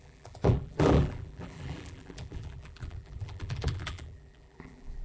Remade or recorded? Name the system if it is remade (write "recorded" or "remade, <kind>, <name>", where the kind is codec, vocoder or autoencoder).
remade, vocoder, BigVGAN v2